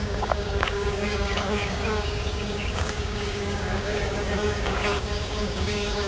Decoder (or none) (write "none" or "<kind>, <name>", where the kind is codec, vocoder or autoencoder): codec, DAC